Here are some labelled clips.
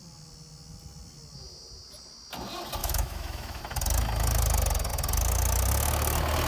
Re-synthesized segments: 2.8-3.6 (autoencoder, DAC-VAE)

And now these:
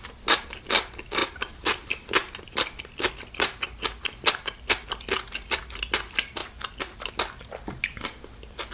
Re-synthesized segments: 1.2-3.1 (vocoder, BigVGAN v2)

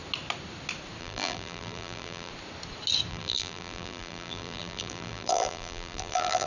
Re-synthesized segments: 1.0-2.3 (vocoder, BigVGAN v2); 3.1-6.5

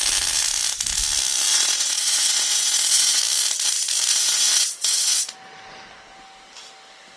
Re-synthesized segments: 1.5-3.2 (vocoder, WaveNeXt); 4.1-5.2